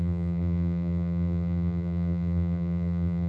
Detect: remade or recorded remade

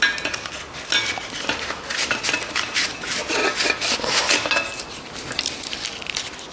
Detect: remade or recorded recorded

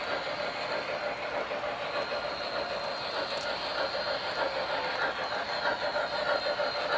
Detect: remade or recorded recorded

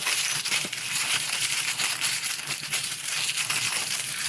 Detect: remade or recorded remade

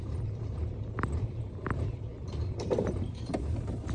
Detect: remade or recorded remade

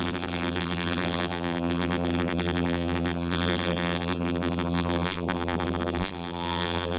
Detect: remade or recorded remade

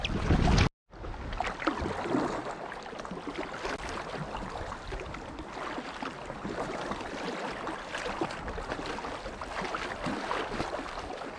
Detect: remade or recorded recorded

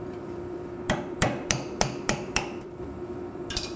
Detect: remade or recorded remade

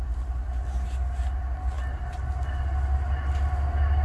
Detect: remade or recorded recorded